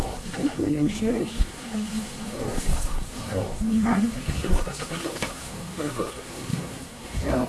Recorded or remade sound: remade